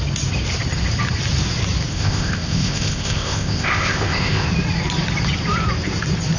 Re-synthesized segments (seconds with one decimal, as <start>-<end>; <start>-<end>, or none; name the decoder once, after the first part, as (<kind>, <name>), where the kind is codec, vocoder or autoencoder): 1.9-4.5 (codec, ZipCodec)